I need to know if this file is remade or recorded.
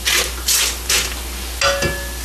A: recorded